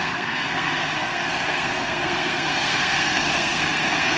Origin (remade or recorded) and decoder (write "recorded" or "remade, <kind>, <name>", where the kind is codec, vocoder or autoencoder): remade, codec, SNAC